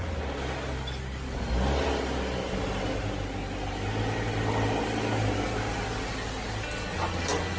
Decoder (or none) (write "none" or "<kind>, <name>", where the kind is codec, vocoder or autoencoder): none